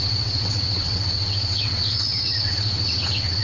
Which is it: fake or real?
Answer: fake